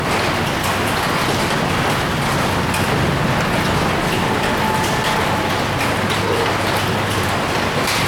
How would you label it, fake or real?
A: real